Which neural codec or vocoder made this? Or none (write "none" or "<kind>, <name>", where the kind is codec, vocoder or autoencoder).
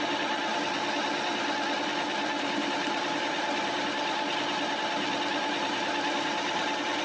none